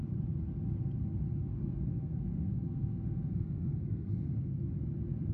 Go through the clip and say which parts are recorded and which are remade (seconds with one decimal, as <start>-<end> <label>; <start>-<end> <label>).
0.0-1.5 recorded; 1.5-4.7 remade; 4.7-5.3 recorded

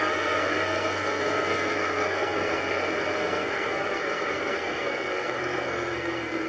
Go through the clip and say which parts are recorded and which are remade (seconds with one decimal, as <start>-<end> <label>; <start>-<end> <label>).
0.0-6.5 remade

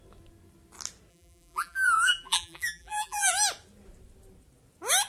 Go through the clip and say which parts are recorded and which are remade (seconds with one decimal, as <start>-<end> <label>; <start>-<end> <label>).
0.0-1.1 recorded; 1.1-3.3 remade; 3.3-5.1 recorded

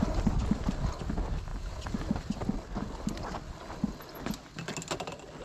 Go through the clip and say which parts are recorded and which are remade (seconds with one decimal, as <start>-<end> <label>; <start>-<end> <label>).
0.0-5.4 recorded

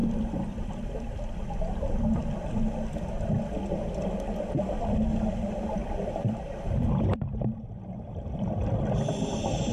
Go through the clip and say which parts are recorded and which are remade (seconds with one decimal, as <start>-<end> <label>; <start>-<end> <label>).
0.0-1.4 remade; 1.4-5.8 recorded; 5.8-8.9 remade; 8.9-9.7 recorded

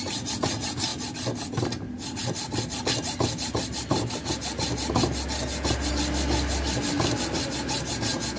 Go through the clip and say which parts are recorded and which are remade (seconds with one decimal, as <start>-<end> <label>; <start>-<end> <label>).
0.0-8.4 recorded